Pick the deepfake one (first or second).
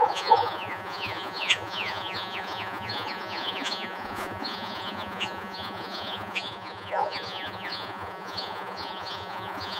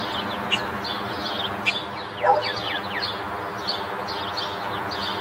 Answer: first